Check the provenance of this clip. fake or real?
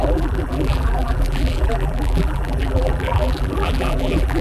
fake